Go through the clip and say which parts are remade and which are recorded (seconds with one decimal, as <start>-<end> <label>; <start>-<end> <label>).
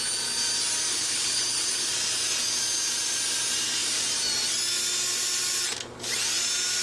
0.0-0.9 recorded; 0.9-1.9 remade; 1.9-6.8 recorded